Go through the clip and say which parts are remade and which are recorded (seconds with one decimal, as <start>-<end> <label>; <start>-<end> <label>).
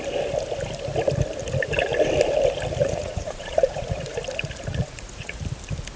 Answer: 0.0-2.8 recorded; 2.8-4.2 remade; 4.2-4.7 recorded; 4.7-5.4 remade; 5.4-6.0 recorded